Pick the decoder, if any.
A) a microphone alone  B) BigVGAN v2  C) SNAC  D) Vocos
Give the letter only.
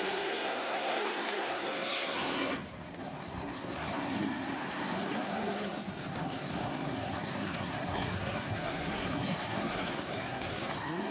C